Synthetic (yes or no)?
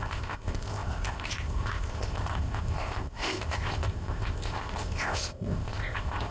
yes